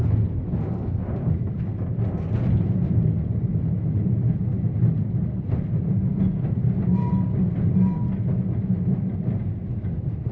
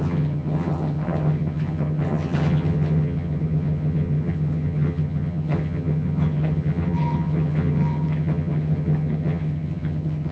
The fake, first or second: second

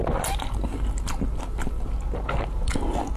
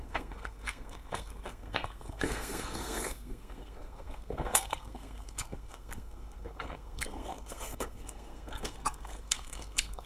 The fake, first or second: second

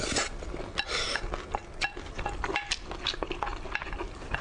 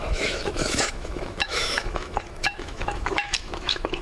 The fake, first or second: second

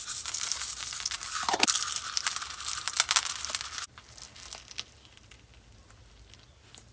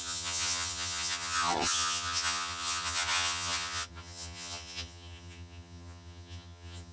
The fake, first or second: second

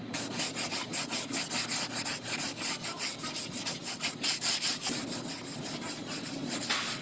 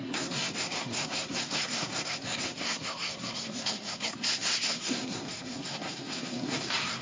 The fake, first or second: second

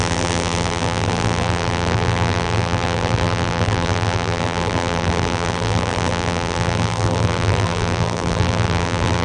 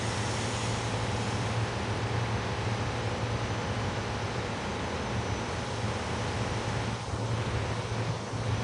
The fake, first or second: first